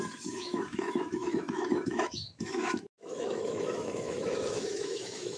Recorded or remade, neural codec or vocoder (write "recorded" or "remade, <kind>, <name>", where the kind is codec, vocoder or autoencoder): remade, autoencoder, DAC-VAE